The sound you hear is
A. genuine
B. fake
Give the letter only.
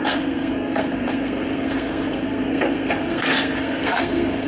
B